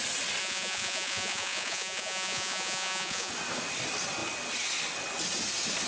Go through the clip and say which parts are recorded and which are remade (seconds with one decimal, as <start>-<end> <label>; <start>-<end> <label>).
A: 0.0-0.4 recorded; 0.4-3.3 remade; 3.3-5.9 recorded